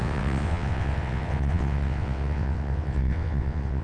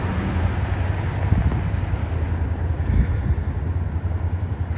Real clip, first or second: second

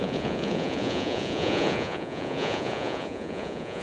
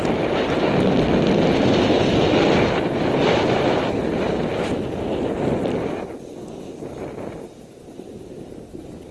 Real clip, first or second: second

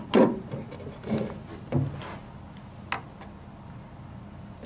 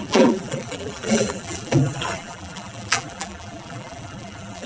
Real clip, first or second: first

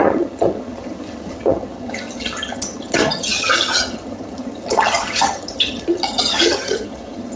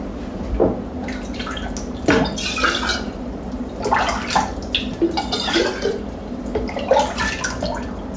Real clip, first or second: second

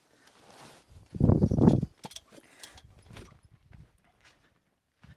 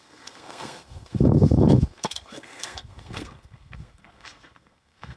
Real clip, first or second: first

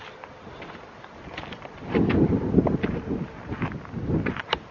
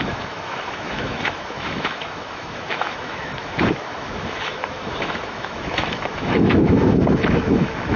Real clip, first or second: first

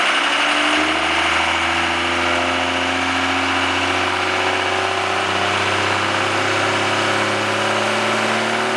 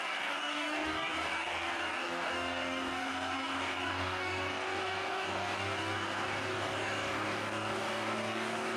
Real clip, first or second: first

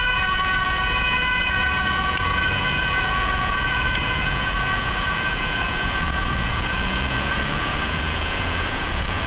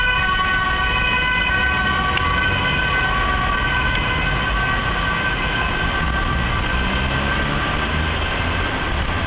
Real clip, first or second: second